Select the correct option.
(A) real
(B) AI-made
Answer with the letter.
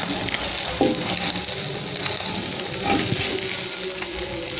A